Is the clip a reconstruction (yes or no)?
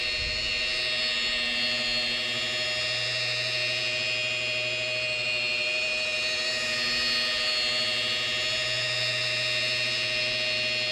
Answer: no